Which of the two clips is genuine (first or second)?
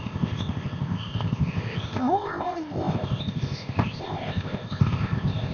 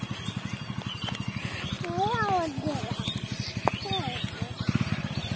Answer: second